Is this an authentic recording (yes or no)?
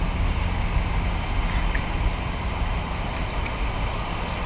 yes